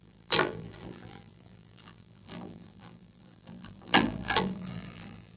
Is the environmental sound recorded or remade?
remade